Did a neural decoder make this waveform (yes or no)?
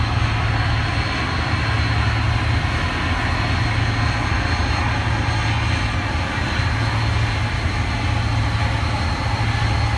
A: no